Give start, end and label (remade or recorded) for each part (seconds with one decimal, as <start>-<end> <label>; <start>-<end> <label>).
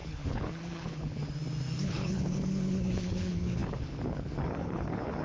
0.0-1.2 remade; 1.2-1.8 recorded; 1.8-5.2 remade